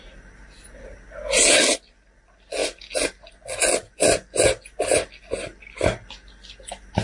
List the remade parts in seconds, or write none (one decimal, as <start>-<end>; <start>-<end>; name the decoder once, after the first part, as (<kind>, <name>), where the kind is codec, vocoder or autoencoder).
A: none